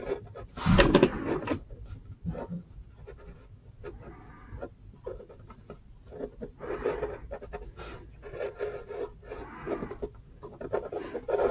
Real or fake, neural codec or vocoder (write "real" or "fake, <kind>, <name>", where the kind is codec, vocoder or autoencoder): real